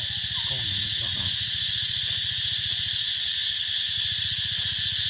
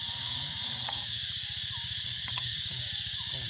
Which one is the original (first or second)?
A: first